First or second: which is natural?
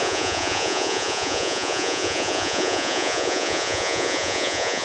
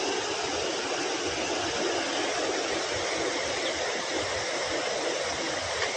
second